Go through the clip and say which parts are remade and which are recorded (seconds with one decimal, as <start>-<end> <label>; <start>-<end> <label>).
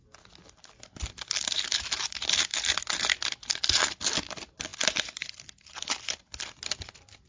0.0-7.3 recorded